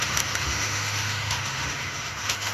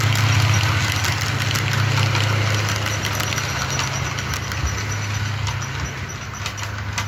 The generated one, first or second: first